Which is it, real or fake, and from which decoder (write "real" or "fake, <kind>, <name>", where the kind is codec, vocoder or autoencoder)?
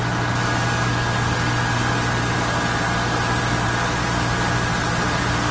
real